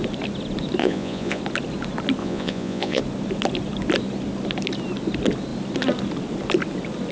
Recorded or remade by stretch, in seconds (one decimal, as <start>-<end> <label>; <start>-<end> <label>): 0.0-0.8 recorded; 0.8-1.4 remade; 1.4-2.2 recorded; 2.2-3.0 remade; 3.0-7.1 recorded

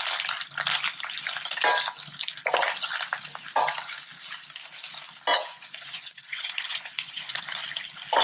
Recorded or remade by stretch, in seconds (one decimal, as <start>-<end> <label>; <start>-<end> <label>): 0.0-5.3 recorded; 5.3-7.4 remade; 7.4-8.2 recorded

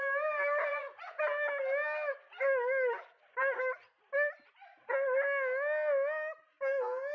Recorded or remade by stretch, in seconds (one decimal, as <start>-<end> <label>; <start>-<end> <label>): 0.0-0.7 recorded; 0.7-1.2 remade; 1.2-7.1 recorded

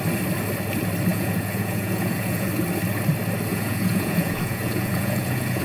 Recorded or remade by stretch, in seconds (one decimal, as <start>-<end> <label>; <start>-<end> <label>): 0.0-1.1 recorded; 1.1-2.5 remade; 2.5-3.5 recorded; 3.5-5.6 remade

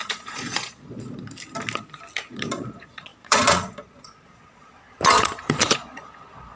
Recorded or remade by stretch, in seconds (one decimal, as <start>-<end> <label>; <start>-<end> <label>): 0.0-1.2 remade; 1.2-2.3 recorded; 2.3-6.6 remade

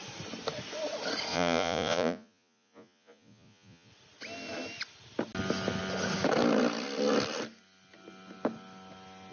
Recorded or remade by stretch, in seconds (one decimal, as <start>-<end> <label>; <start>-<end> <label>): 0.0-1.3 recorded; 1.3-3.9 remade; 3.9-9.3 recorded